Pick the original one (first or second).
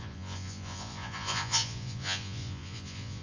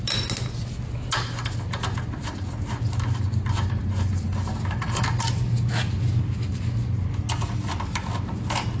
second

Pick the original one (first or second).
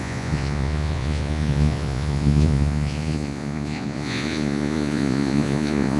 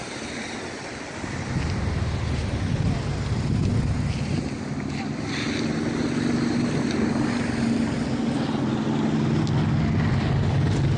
second